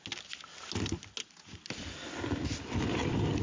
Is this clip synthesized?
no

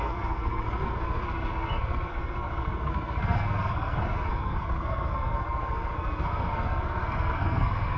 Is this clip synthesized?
yes